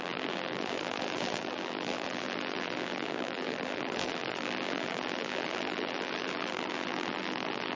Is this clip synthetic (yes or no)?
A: yes